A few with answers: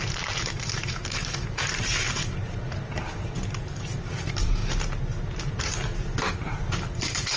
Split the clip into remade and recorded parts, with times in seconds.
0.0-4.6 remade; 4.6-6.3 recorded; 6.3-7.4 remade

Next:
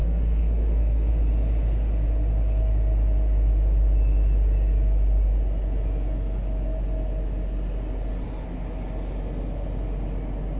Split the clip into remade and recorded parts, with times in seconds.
0.0-1.1 remade; 1.1-10.6 recorded

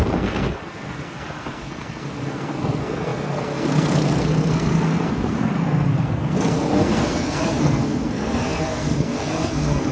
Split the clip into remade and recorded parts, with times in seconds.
0.0-9.9 remade

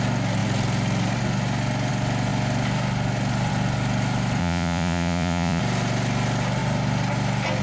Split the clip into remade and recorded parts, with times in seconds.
0.0-4.4 recorded; 4.4-5.6 remade; 5.6-7.6 recorded

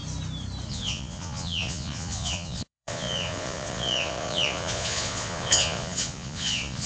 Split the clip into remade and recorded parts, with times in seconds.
0.0-0.7 recorded; 0.7-6.9 remade

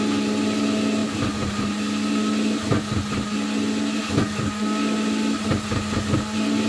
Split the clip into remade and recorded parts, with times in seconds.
0.0-1.0 recorded; 1.0-1.5 remade; 1.5-6.7 recorded

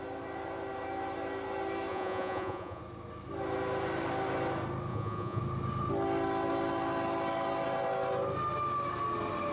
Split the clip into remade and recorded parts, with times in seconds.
0.0-1.9 recorded; 1.9-2.8 remade; 2.8-4.9 recorded; 4.9-5.4 remade; 5.4-9.5 recorded

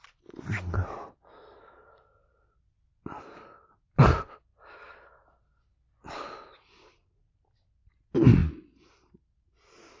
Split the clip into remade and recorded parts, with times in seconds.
0.0-10.0 recorded